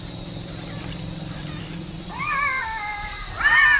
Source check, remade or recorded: recorded